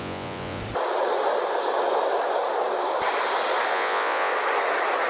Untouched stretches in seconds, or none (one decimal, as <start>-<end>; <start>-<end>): 0.6-3.7; 4.3-5.1